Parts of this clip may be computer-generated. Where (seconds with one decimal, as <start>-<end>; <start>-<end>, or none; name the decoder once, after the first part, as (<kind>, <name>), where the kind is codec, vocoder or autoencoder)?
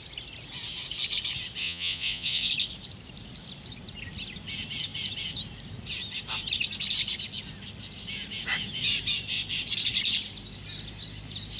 1.6-2.5 (vocoder, Vocos)